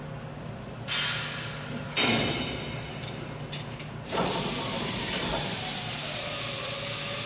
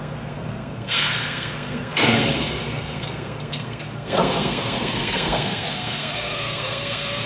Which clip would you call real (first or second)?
first